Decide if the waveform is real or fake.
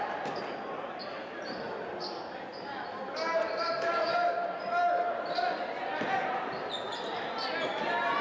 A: real